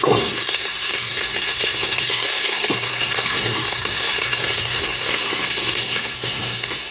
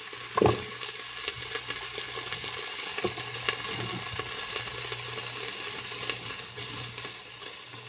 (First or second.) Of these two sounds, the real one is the second